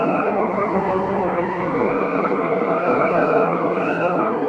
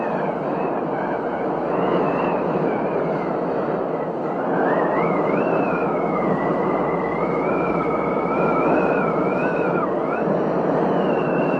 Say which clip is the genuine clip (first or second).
second